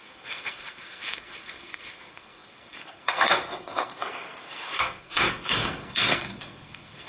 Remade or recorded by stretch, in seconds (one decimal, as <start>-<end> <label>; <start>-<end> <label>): 0.0-7.1 remade